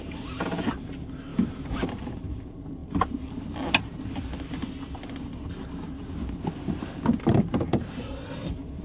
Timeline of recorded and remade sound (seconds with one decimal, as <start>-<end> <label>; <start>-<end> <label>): 0.0-1.3 remade; 1.3-1.9 recorded; 1.9-8.8 remade